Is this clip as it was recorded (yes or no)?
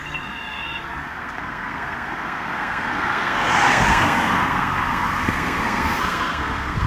no